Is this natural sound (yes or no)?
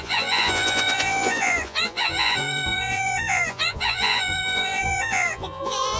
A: no